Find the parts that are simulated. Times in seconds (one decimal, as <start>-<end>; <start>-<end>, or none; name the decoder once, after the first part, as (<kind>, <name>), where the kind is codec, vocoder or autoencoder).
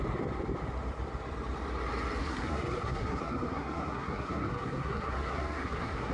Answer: 2.2-6.1 (codec, SNAC)